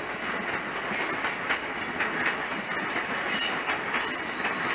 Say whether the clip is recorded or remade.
recorded